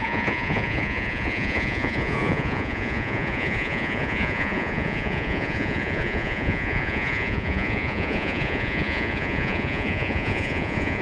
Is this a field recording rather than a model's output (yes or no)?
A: no